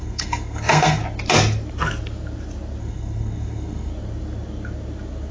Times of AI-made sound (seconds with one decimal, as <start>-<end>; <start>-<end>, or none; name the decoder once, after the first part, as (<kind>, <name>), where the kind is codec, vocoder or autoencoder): 0.0-1.0 (codec, SNAC); 2.8-3.9